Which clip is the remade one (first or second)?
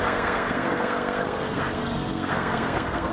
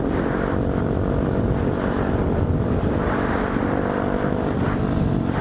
first